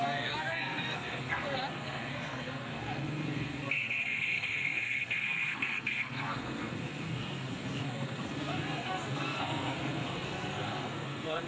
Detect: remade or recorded remade